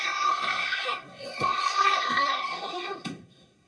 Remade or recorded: remade